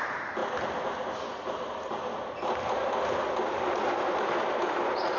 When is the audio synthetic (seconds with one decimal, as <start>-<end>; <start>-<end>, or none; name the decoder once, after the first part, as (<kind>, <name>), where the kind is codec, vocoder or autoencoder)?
none